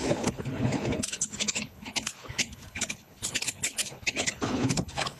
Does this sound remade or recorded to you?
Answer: remade